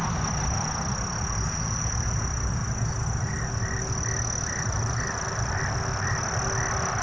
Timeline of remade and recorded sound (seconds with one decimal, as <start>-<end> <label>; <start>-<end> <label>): 0.0-7.0 recorded